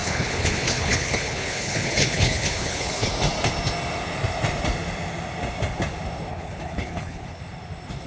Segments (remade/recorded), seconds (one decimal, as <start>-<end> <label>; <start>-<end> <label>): 0.0-3.1 remade; 3.1-6.3 recorded; 6.3-7.4 remade; 7.4-8.1 recorded